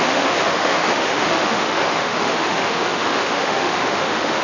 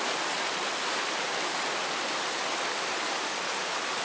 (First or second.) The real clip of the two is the second